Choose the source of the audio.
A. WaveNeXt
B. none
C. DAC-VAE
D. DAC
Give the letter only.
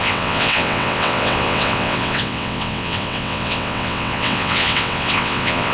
A